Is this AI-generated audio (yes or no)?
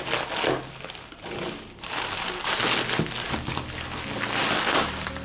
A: no